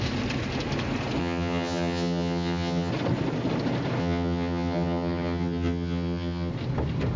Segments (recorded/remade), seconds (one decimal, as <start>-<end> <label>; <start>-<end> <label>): 0.0-1.2 recorded; 1.2-2.9 remade; 2.9-4.0 recorded; 4.0-6.5 remade; 6.5-7.2 recorded